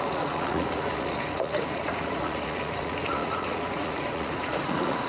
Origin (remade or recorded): remade